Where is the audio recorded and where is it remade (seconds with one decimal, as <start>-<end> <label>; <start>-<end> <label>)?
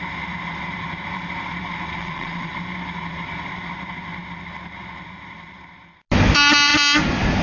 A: 0.0-2.0 recorded; 2.0-2.5 remade; 2.5-7.4 recorded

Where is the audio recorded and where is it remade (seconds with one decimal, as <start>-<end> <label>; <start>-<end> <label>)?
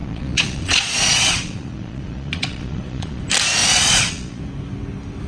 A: 0.0-3.2 remade; 3.2-3.6 recorded; 3.6-4.4 remade; 4.4-5.3 recorded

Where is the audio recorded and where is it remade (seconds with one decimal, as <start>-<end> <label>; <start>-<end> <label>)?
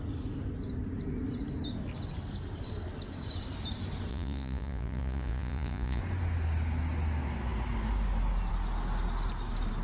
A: 0.0-4.1 recorded; 4.1-6.0 remade; 6.0-9.8 recorded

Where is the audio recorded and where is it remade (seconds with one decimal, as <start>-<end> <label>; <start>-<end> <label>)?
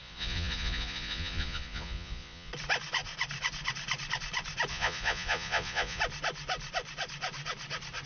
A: 0.0-2.5 remade; 2.5-4.7 recorded; 4.7-6.0 remade; 6.0-8.1 recorded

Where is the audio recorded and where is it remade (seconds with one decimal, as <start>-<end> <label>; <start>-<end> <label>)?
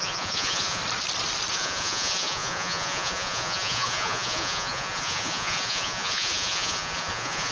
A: 0.0-0.8 remade; 0.8-1.5 recorded; 1.5-7.5 remade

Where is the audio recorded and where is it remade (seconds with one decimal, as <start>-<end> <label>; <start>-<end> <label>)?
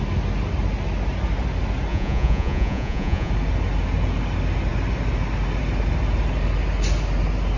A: 0.0-1.9 recorded; 1.9-3.3 remade; 3.3-7.6 recorded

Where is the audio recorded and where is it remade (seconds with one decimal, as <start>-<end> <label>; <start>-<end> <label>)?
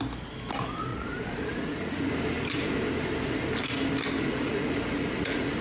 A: 0.0-0.9 recorded; 0.9-2.1 remade; 2.1-4.3 recorded; 4.3-5.6 remade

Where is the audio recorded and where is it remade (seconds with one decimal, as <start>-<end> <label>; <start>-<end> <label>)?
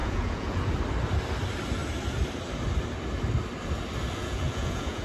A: 0.0-0.7 remade; 0.7-4.2 recorded; 4.2-5.0 remade